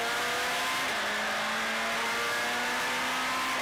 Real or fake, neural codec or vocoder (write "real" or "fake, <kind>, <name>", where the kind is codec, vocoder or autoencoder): real